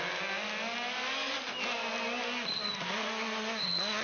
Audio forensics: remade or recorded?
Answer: recorded